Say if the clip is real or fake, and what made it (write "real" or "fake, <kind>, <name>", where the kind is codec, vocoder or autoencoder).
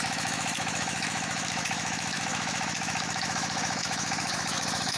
fake, autoencoder, DAC-VAE